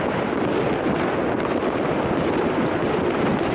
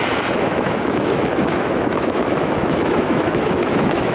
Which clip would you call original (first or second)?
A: first